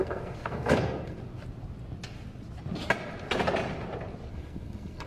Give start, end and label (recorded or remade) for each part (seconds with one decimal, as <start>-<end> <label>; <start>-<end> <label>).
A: 0.0-1.2 remade; 1.2-4.3 recorded; 4.3-5.1 remade